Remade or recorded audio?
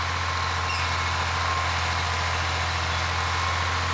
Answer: recorded